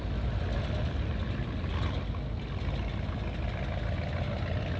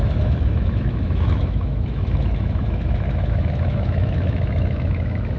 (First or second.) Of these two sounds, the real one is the first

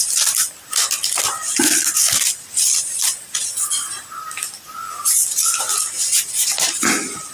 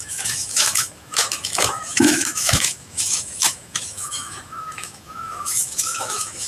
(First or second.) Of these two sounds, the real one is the first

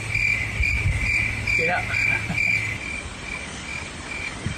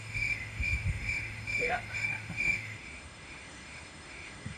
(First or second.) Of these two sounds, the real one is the first